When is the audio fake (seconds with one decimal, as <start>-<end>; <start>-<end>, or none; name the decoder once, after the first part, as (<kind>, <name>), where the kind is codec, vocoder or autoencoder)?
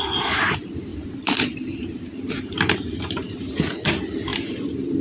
0.0-5.0 (vocoder, BigVGAN v2)